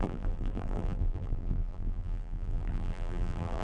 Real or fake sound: fake